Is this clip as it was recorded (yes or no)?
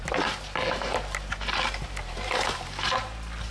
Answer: yes